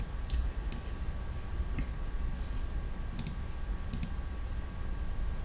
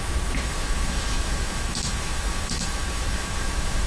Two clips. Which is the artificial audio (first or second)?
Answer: second